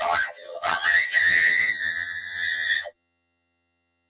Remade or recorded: remade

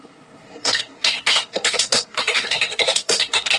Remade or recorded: remade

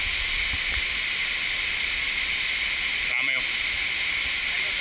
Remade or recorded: recorded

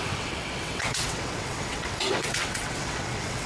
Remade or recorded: remade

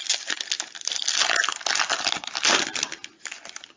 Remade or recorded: recorded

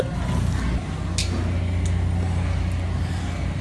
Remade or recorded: recorded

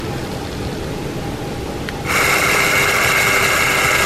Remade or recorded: recorded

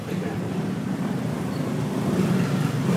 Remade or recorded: remade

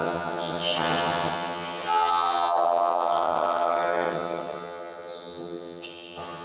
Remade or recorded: remade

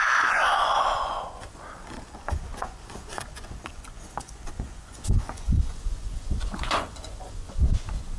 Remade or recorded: remade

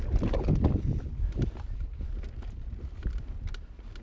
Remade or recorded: recorded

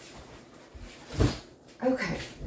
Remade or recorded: remade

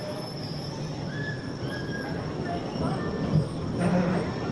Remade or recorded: recorded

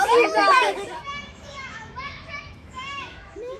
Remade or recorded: remade